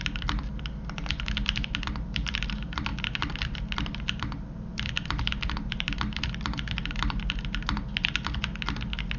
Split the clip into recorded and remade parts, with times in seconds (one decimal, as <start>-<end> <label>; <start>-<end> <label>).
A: 0.0-9.2 recorded